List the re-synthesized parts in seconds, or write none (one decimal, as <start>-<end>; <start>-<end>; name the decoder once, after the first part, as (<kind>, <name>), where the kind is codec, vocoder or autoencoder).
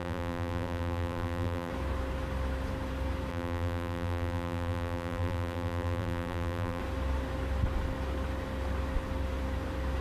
0.0-1.7 (vocoder, BigVGAN v2); 3.3-6.8